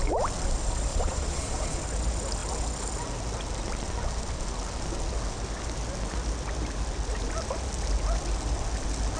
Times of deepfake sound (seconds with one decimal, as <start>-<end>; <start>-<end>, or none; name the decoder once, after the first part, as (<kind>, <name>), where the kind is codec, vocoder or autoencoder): 0.9-1.8 (vocoder, Vocos)